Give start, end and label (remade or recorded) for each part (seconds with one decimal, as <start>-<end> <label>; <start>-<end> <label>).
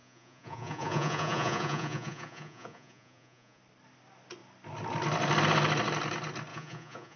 0.0-3.6 remade; 3.6-6.5 recorded; 6.5-7.2 remade